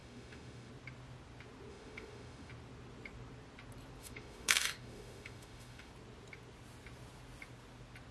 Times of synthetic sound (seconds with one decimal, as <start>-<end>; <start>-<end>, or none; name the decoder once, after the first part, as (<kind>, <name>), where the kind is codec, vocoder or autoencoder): 0.0-0.7 (autoencoder, DAC-VAE); 1.7-2.5; 4.0-5.9